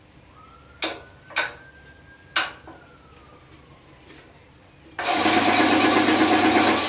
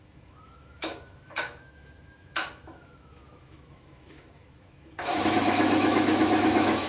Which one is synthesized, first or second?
second